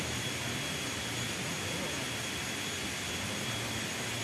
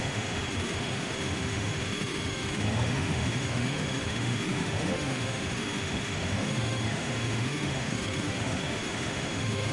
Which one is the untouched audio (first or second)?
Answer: first